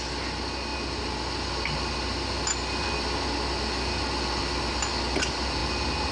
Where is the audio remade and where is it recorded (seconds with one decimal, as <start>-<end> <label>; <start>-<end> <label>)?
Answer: 0.0-6.1 recorded